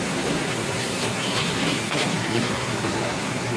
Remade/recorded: remade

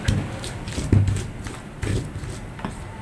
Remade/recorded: recorded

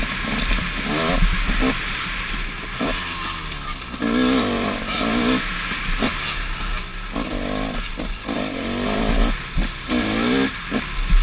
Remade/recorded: recorded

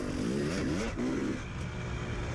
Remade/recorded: recorded